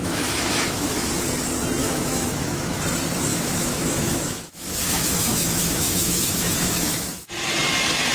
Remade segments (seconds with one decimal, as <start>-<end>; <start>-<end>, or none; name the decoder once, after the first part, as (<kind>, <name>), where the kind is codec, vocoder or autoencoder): 0.0-1.1 (autoencoder, DAC-VAE); 1.8-2.8; 3.3-7.3

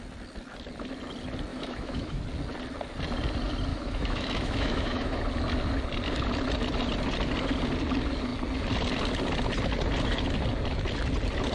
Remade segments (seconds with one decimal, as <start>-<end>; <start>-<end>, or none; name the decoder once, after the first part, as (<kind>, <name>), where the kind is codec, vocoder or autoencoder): 1.5-2.2 (autoencoder, DAC-VAE); 3.7-5.2

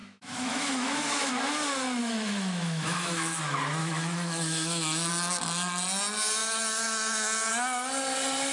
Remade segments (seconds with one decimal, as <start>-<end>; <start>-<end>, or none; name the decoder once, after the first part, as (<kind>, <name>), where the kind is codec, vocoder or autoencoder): 0.0-1.3 (autoencoder, DAC-VAE); 2.0-3.4; 3.8-5.1; 6.4-7.5

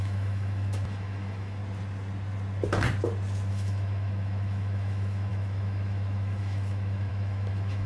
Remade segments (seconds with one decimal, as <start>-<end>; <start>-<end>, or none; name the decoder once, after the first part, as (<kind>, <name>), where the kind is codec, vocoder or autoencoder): 0.0-1.6 (autoencoder, DAC-VAE); 3.5-7.9

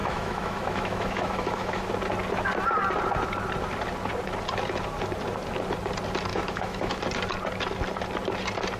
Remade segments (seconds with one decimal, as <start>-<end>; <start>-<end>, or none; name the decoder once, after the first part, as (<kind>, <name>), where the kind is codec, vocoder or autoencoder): 0.0-1.9 (autoencoder, DAC-VAE); 6.3-7.0